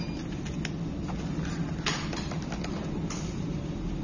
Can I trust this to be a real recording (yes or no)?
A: yes